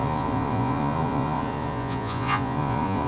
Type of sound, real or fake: fake